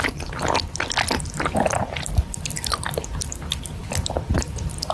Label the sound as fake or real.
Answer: fake